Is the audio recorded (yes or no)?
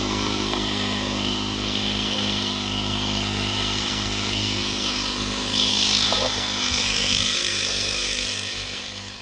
no